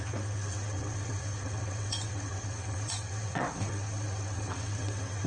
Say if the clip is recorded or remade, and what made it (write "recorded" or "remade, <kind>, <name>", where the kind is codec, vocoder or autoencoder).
remade, vocoder, WaveNeXt